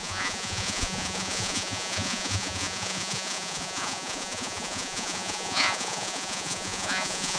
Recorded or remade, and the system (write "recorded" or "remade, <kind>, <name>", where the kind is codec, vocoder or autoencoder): remade, vocoder, Vocos